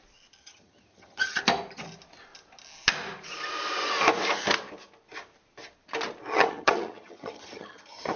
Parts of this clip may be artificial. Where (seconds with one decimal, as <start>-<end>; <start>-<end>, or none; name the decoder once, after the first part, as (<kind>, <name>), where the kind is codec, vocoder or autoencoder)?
0.4-1.4 (vocoder, HiFi-GAN); 6.3-8.2